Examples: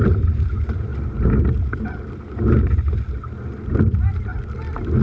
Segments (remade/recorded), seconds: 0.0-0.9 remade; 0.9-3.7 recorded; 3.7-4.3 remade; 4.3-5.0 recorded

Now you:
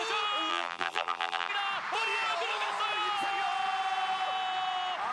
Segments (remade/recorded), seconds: 0.0-0.5 recorded; 0.5-1.5 remade; 1.5-5.1 recorded

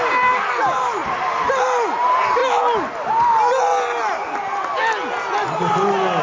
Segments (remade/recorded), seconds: 0.0-6.2 recorded

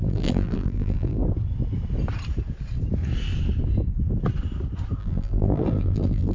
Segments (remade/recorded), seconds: 0.0-1.2 remade; 1.2-5.0 recorded; 5.0-6.3 remade

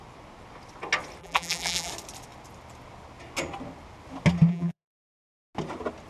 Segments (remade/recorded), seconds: 0.0-1.2 recorded; 1.2-1.9 remade; 1.9-4.5 recorded; 4.5-5.2 remade; 5.2-6.1 recorded